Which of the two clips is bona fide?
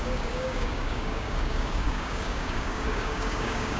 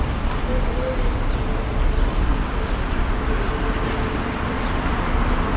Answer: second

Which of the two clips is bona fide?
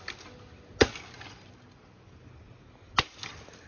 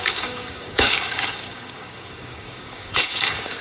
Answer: first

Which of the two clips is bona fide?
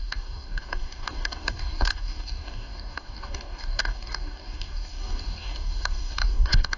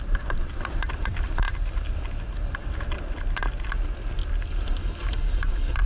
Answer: second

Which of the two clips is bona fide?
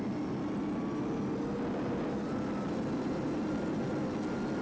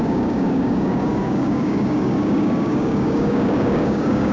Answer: first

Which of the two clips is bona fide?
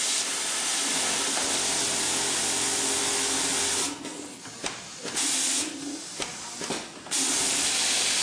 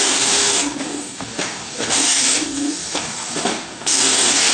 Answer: first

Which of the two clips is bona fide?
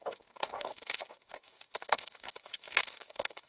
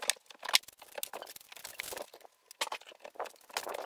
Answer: second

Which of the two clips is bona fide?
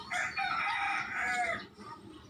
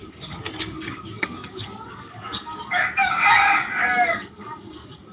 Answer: first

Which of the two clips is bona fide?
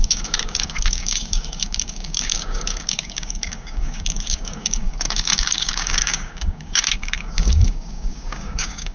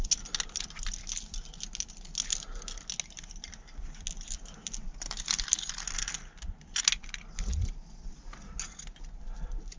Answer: second